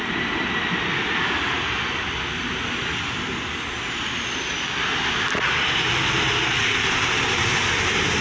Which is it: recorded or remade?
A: recorded